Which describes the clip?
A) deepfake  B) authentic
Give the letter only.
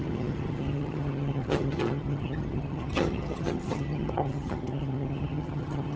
A